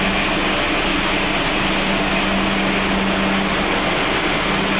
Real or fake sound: real